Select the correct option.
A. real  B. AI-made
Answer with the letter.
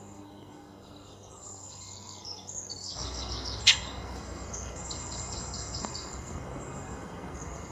B